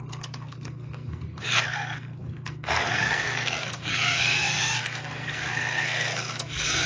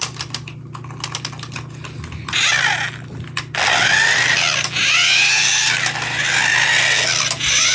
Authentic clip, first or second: second